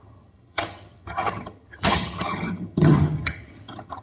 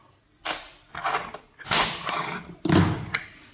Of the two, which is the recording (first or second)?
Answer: second